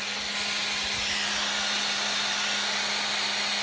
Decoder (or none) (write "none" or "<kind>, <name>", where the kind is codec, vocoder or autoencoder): none